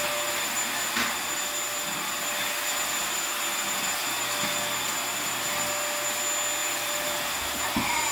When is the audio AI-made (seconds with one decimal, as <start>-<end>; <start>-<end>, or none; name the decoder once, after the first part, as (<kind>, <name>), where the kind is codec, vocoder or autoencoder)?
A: 6.6-7.4 (vocoder, BigVGAN v2)